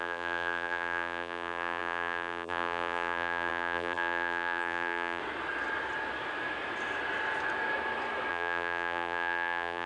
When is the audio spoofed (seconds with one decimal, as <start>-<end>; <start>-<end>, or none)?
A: 0.0-5.2; 8.3-9.9